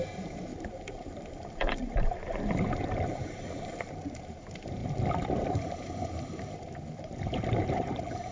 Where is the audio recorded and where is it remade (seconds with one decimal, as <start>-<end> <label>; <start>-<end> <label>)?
0.0-4.8 remade; 4.8-5.5 recorded; 5.5-8.3 remade